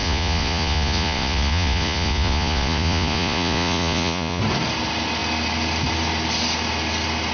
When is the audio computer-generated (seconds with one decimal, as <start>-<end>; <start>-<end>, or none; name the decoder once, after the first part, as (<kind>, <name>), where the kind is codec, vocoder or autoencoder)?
0.0-4.4 (vocoder, Vocos)